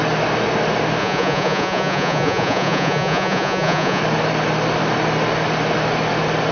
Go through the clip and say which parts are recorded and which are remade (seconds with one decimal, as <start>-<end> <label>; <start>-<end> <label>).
0.0-1.0 recorded; 1.0-4.0 remade; 4.0-6.5 recorded